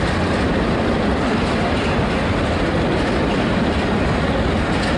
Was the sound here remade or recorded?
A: recorded